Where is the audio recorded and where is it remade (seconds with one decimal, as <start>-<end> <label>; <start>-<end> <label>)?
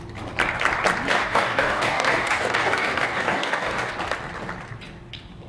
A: 0.0-1.1 recorded; 1.1-3.9 remade; 3.9-5.5 recorded